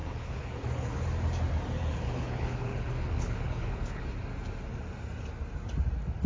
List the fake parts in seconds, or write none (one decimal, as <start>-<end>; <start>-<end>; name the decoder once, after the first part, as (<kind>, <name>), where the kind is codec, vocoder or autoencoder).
0.0-1.0 (codec, HILCodec); 1.8-4.0

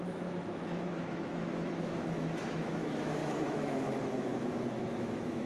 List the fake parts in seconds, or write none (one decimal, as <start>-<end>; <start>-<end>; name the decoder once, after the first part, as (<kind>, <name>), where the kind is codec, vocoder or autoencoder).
0.0-5.5 (autoencoder, DAC-VAE)